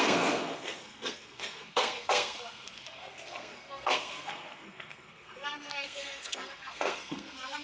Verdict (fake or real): fake